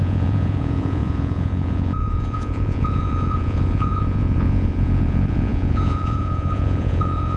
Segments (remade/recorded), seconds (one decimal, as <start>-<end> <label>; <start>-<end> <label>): 0.0-7.4 remade